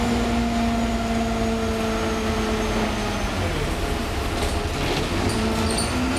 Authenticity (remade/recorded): recorded